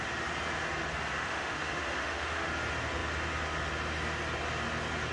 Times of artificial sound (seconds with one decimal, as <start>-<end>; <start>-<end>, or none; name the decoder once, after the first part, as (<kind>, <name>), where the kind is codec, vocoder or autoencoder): 1.1-2.5 (autoencoder, DAC-VAE)